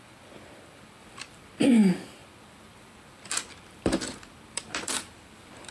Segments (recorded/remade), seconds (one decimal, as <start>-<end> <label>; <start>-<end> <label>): 0.0-5.7 remade